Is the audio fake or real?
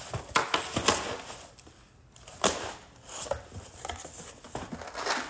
real